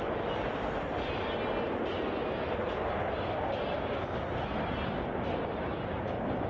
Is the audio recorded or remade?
recorded